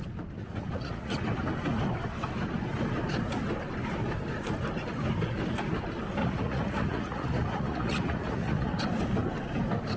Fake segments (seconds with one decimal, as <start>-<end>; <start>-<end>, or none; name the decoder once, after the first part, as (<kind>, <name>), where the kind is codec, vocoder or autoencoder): 0.4-1.2 (vocoder, Vocos); 6.2-8.8